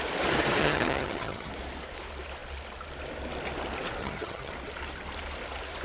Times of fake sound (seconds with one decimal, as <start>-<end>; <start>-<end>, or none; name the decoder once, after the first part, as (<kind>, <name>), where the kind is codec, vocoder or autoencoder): 0.6-1.5 (vocoder, HiFi-GAN); 4.0-4.5